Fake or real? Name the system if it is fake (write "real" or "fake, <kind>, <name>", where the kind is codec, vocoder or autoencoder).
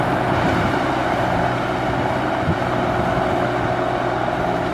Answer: real